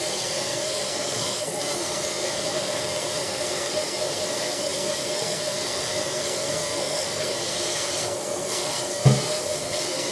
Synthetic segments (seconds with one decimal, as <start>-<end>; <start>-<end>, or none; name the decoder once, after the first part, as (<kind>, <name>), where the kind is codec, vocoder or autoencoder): 0.0-10.1 (codec, SNAC)